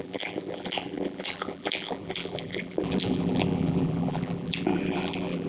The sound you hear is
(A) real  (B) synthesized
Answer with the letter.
B